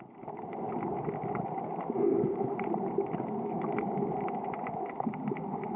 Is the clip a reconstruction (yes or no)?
no